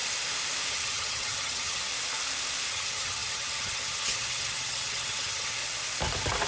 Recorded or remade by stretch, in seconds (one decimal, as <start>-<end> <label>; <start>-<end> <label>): 0.0-0.7 recorded; 0.7-1.9 remade; 1.9-2.7 recorded; 2.7-5.6 remade; 5.6-6.5 recorded